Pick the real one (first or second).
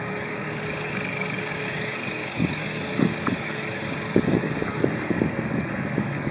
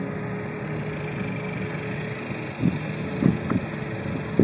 second